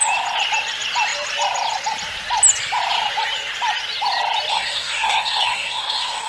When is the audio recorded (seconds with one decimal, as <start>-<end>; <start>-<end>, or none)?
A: 0.0-4.5